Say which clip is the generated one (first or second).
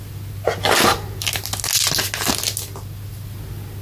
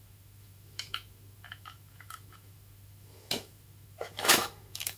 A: second